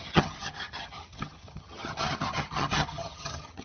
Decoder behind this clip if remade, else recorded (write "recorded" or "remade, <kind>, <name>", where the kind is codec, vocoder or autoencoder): remade, vocoder, HiFi-GAN